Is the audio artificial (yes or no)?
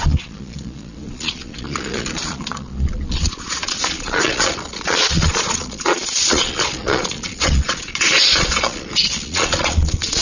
yes